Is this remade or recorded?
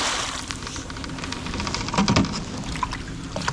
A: recorded